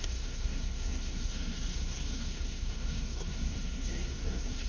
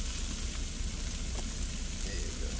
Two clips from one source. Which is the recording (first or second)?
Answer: second